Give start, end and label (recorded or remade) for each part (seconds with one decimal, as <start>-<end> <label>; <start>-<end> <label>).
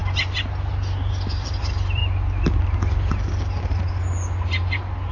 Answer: 0.0-1.1 recorded; 1.1-2.0 remade; 2.0-5.1 recorded